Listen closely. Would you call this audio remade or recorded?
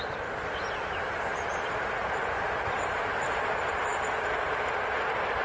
recorded